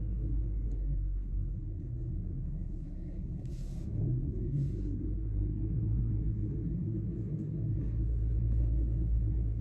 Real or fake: fake